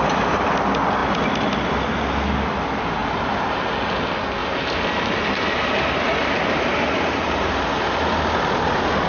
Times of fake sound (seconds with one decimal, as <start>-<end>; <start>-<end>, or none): 3.0-3.6; 4.4-7.6